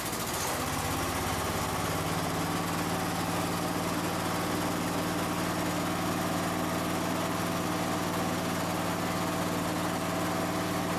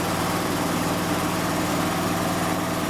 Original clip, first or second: first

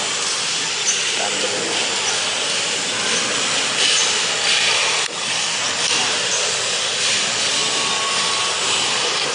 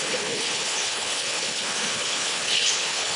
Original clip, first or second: first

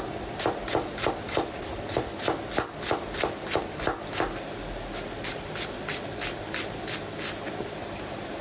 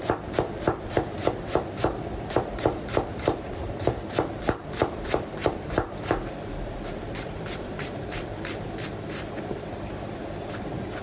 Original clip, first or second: first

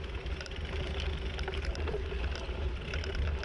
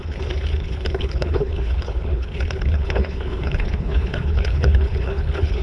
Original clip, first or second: first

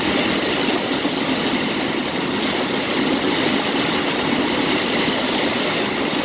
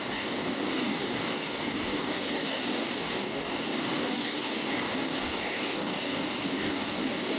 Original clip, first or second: first